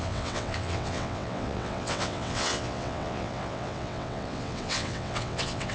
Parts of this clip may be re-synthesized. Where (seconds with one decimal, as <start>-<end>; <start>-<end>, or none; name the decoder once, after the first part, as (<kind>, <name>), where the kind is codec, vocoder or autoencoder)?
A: 0.0-5.7 (vocoder, WaveNeXt)